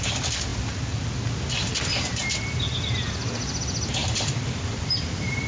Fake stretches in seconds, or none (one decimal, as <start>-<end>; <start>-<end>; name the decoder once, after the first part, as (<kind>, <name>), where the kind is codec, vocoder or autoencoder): 4.0-5.5 (vocoder, BigVGAN v2)